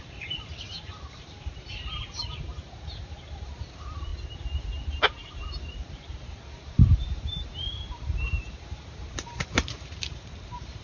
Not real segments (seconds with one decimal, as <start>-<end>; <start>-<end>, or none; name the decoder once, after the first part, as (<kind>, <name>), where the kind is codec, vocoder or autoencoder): 0.0-4.1 (vocoder, BigVGAN v2); 5.3-10.8